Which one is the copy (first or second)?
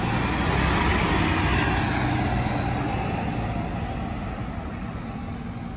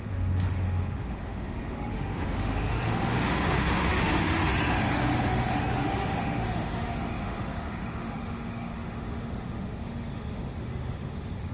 second